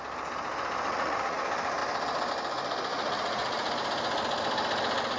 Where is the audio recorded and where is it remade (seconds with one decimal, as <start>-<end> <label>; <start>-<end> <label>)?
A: 0.0-0.9 recorded; 0.9-1.4 remade; 1.4-2.9 recorded; 2.9-3.7 remade; 3.7-5.2 recorded